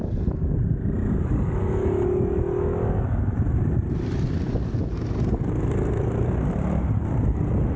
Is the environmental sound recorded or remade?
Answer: recorded